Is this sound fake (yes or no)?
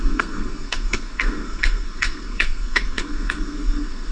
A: yes